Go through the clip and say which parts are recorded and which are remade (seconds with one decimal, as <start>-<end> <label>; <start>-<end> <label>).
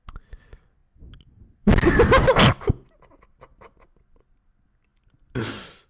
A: 0.0-5.9 recorded